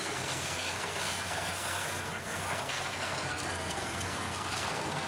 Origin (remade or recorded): remade